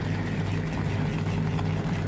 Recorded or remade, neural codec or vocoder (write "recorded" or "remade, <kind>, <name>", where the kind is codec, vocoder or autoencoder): recorded